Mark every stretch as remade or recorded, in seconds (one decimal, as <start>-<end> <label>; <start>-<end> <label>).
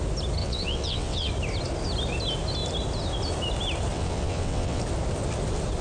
0.0-0.4 recorded; 0.4-1.3 remade; 1.3-3.9 recorded; 3.9-4.8 remade; 4.8-5.8 recorded